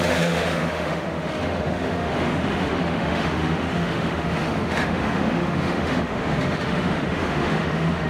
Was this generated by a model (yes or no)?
yes